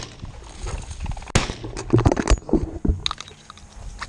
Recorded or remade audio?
recorded